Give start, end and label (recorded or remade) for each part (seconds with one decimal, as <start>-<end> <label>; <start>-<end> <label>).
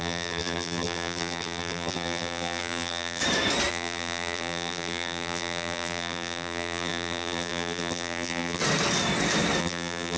0.0-3.2 remade; 3.2-3.7 recorded; 3.7-8.6 remade; 8.6-9.6 recorded; 9.6-10.2 remade